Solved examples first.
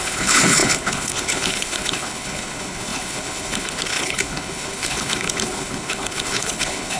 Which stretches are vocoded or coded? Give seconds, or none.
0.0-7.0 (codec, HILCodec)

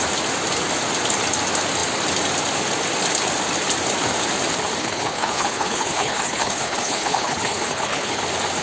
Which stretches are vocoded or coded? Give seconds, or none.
4.8-8.2 (codec, HILCodec)

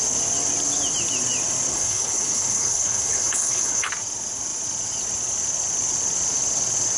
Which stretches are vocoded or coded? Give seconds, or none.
1.7-3.9 (codec, HILCodec)

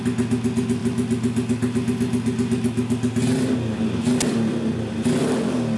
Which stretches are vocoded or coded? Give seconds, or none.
none

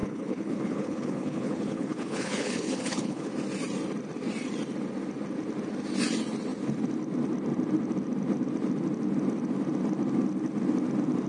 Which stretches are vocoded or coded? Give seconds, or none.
0.0-3.3 (codec, HILCodec)

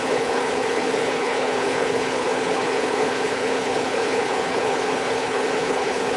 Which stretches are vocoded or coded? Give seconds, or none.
0.0-6.2 (codec, HILCodec)